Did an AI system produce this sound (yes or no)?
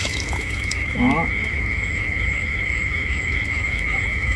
yes